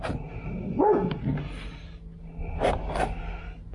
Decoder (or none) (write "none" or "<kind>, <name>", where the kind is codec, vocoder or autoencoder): none